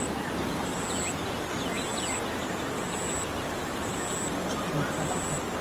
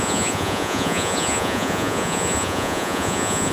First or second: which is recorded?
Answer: first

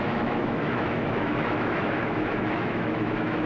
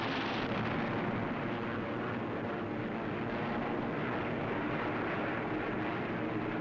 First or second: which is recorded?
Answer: second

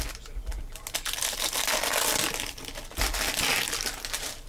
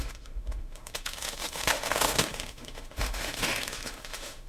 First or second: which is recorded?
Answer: first